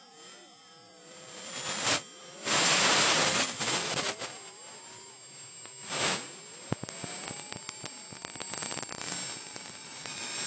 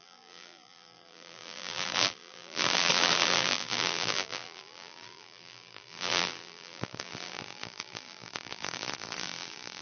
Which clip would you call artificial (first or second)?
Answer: second